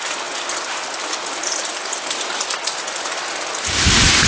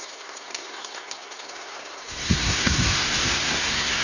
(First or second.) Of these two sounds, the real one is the first